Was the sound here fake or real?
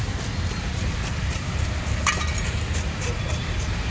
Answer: real